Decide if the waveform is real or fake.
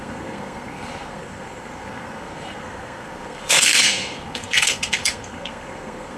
fake